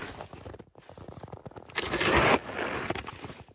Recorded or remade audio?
recorded